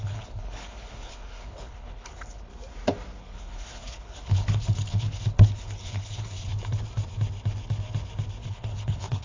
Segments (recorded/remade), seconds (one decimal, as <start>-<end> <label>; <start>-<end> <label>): 0.0-2.5 remade; 2.5-3.2 recorded; 3.2-6.5 remade; 6.5-8.5 recorded; 8.5-9.2 remade